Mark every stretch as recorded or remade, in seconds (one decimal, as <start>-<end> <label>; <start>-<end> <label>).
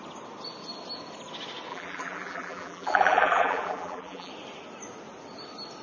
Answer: 0.0-1.7 recorded; 1.7-4.3 remade; 4.3-5.8 recorded